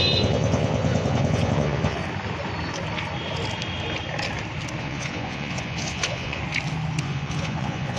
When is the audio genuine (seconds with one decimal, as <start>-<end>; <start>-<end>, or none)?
2.0-4.8; 6.4-7.0